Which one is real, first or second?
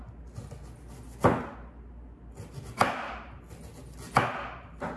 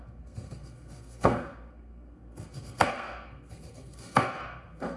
first